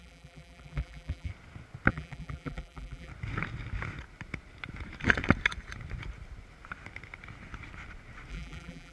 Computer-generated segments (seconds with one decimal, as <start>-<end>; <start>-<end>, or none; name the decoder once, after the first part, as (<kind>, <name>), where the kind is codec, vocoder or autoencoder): 0.0-1.3 (vocoder, BigVGAN v2); 1.9-3.1; 8.3-8.9